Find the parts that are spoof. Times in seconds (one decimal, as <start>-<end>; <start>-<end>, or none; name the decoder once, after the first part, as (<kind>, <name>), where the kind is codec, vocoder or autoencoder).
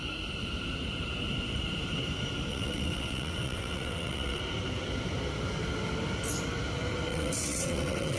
2.5-4.4 (vocoder, WaveNeXt); 7.1-8.2